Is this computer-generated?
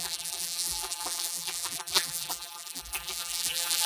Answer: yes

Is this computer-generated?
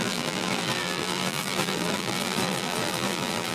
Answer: yes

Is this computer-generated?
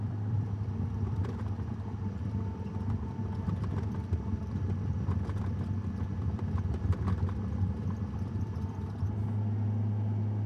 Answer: yes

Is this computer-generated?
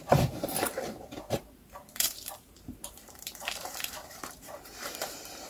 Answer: yes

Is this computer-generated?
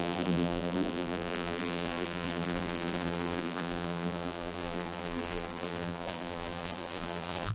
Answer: yes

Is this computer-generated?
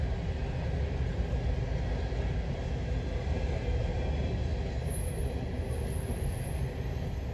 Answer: no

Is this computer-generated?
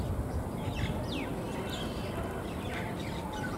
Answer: no